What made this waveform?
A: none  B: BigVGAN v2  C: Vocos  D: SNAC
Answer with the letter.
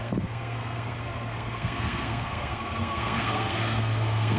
D